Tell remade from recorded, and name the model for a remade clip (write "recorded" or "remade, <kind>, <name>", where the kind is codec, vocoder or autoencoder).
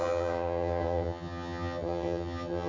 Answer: remade, vocoder, HiFi-GAN